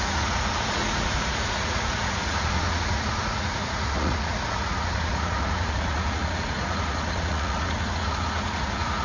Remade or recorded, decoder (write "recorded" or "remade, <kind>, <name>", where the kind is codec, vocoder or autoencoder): remade, vocoder, Vocos